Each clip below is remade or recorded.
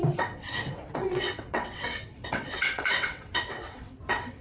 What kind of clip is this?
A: remade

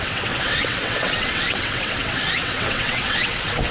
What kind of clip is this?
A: remade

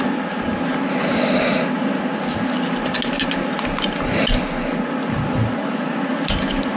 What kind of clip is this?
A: recorded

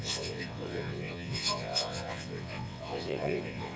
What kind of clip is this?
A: remade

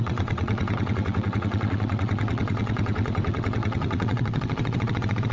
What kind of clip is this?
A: remade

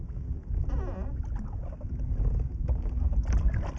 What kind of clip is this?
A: recorded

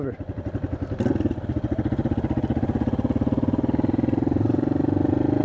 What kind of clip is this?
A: recorded